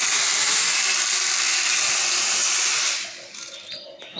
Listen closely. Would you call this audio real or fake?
real